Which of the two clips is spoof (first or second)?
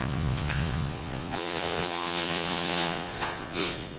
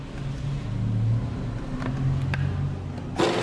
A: first